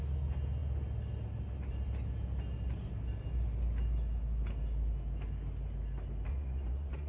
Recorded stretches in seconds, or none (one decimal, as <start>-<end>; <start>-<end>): 0.0-6.3